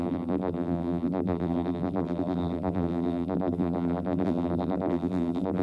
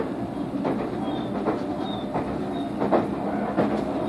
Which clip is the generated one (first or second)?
first